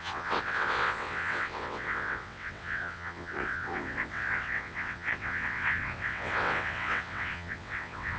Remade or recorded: remade